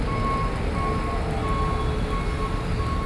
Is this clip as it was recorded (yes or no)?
yes